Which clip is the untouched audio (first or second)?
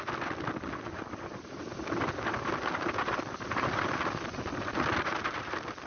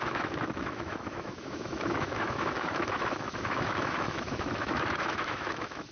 first